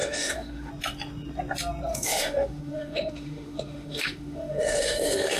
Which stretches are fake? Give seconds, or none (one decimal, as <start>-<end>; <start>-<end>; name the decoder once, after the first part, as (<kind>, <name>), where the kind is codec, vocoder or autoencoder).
0.0-0.7 (autoencoder, DAC-VAE); 1.9-5.4